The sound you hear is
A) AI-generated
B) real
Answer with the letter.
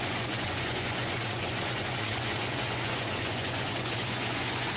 A